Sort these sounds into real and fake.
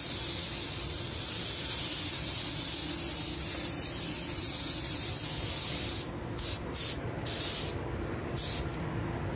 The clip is real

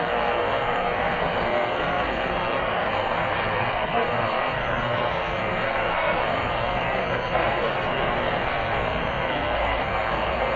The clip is fake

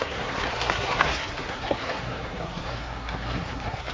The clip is fake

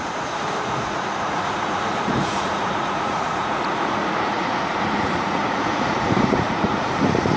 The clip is fake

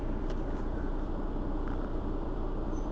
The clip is fake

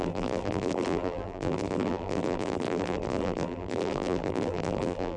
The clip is fake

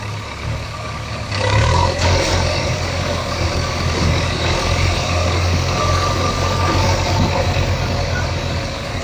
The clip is fake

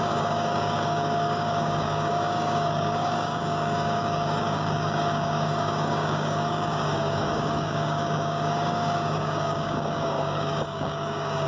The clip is fake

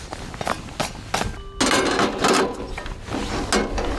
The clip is real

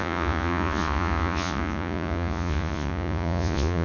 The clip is fake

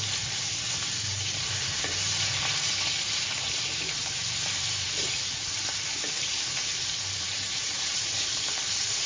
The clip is fake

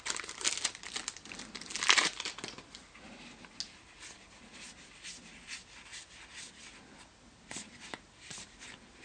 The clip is real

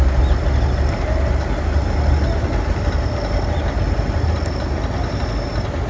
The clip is real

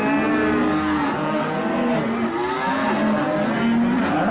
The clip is real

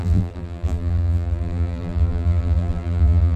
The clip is fake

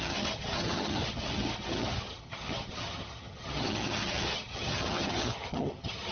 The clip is fake